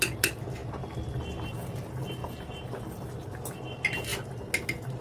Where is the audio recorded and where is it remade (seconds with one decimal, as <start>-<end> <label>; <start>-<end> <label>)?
0.0-5.0 recorded